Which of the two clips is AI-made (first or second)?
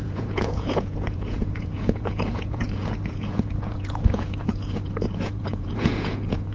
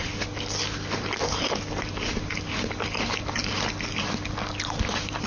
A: first